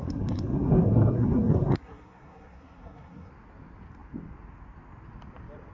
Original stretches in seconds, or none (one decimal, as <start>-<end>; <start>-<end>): 3.3-5.7